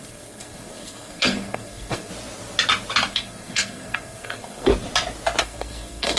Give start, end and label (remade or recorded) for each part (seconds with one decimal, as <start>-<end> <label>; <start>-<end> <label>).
0.0-2.1 remade; 2.1-3.1 recorded; 3.1-4.7 remade; 4.7-5.4 recorded; 5.4-6.2 remade